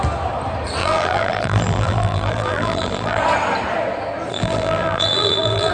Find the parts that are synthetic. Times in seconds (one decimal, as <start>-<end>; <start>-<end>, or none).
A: 0.8-3.2; 4.3-5.7